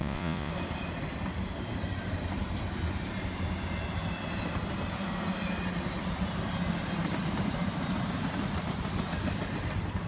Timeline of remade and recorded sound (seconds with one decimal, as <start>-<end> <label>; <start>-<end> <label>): 0.0-0.5 remade; 0.5-10.1 recorded